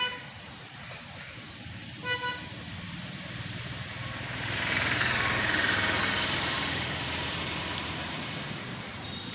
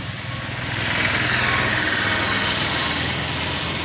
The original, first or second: second